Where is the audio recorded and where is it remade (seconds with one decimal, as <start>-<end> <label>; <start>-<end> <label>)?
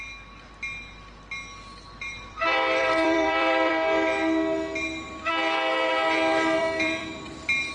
0.0-1.7 recorded; 1.7-3.7 remade; 3.7-6.6 recorded; 6.6-7.3 remade; 7.3-7.7 recorded